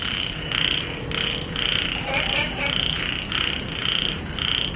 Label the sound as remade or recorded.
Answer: recorded